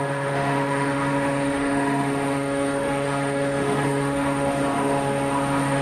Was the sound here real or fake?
fake